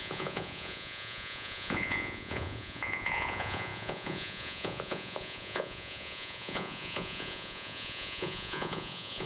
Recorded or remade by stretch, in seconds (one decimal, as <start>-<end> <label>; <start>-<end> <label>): 0.0-9.3 remade